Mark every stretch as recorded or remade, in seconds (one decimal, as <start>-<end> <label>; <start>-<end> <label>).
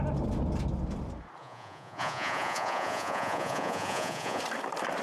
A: 0.0-1.4 recorded; 1.4-4.4 remade; 4.4-5.0 recorded